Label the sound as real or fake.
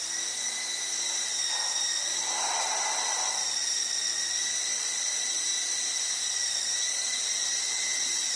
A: real